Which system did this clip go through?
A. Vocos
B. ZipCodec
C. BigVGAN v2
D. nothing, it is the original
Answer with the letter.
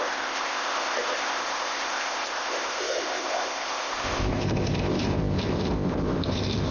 B